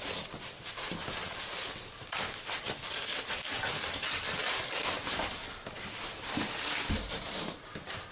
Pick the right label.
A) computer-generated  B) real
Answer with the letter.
A